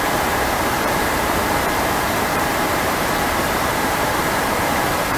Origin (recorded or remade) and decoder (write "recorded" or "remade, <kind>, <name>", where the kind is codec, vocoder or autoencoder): remade, vocoder, BigVGAN v2